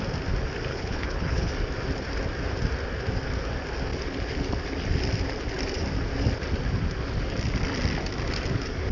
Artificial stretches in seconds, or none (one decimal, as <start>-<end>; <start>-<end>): 0.7-1.5